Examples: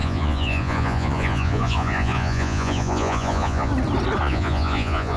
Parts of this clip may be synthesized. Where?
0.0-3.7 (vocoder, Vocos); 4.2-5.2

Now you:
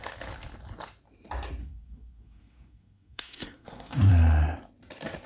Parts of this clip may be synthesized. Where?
1.6-4.1 (codec, SNAC)

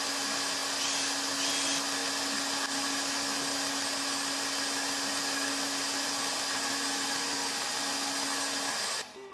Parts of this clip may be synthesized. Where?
none

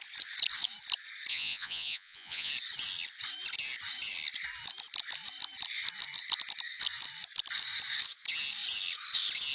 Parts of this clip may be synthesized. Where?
1.3-2.5 (vocoder, Vocos)

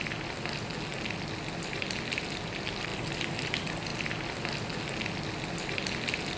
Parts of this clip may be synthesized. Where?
none

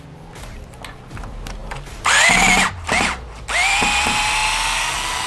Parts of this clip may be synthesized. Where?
1.6-2.4 (vocoder, BigVGAN v2)

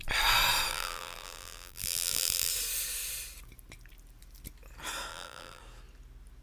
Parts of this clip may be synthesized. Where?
0.7-2.5 (vocoder, BigVGAN v2); 5.1-5.6